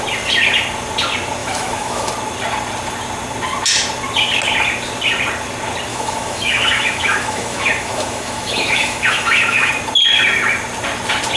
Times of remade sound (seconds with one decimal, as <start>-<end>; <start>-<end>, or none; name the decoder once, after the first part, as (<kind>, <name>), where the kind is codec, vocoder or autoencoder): 1.4-2.1 (autoencoder, DAC-VAE); 5.9-9.7